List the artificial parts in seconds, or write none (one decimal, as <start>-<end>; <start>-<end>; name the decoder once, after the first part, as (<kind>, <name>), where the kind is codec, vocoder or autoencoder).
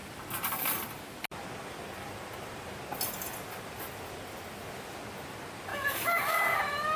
5.7-6.6 (codec, DAC)